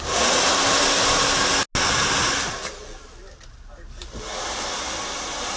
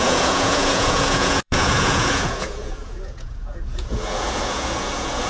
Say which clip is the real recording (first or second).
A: first